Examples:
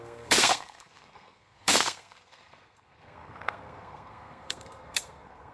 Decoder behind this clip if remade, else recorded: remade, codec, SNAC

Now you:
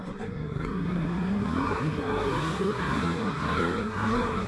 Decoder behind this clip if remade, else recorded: remade, codec, SNAC